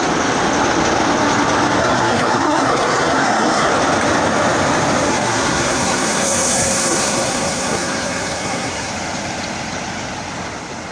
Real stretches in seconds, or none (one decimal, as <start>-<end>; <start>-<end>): 0.0-1.8; 3.7-5.1; 8.9-10.9

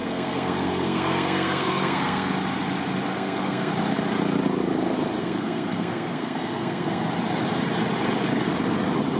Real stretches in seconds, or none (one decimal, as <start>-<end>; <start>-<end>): 2.3-3.1; 3.7-5.2; 7.0-9.2

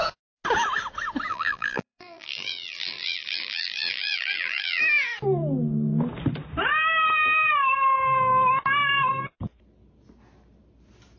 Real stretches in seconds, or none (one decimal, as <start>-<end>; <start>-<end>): 0.0-1.3; 4.8-11.2

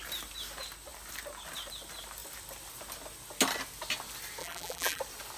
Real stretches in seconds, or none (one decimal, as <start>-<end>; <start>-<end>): 0.0-4.4; 5.0-5.4

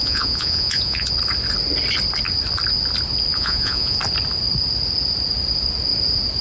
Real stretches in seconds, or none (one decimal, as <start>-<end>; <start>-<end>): 1.1-3.3; 4.0-6.4

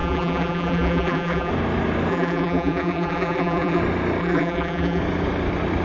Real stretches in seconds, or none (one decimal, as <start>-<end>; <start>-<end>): 1.5-2.1; 3.8-4.2; 5.0-5.8